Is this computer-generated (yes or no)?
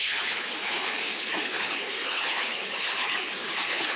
yes